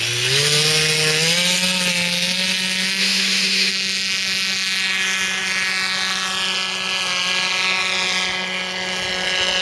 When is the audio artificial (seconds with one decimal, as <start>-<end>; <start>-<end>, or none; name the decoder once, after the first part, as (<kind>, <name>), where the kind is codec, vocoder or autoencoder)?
3.0-3.7 (autoencoder, DAC-VAE)